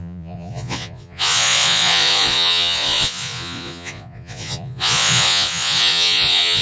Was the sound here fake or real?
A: fake